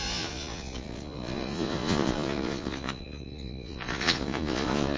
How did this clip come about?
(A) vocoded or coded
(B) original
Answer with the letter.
A